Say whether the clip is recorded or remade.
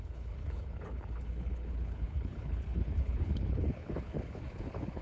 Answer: remade